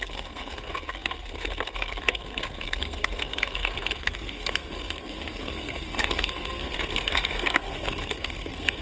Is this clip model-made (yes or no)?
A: yes